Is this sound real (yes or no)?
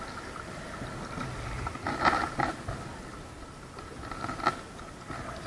yes